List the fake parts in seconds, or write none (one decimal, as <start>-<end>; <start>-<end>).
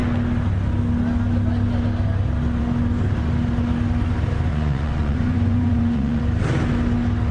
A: 4.5-6.2